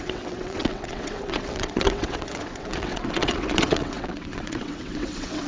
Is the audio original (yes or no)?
no